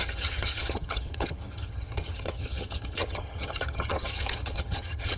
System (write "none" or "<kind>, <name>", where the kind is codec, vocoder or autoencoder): vocoder, HiFi-GAN